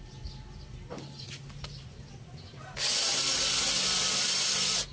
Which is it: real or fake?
real